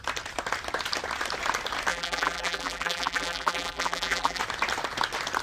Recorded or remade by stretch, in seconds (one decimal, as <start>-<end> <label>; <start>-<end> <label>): 0.0-1.9 recorded; 1.9-4.4 remade; 4.4-5.4 recorded